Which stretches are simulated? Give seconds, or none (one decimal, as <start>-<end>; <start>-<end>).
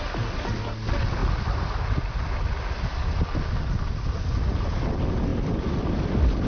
none